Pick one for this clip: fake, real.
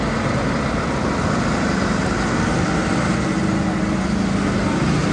real